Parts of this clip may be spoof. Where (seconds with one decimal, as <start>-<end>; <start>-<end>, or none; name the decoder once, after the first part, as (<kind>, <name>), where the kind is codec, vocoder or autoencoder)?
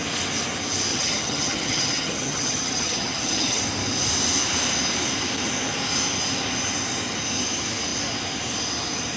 0.9-3.6 (vocoder, HiFi-GAN)